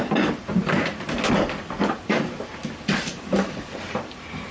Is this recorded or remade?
remade